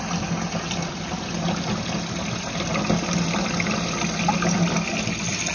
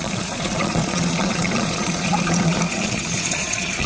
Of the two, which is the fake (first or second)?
second